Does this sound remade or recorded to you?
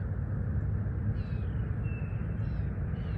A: recorded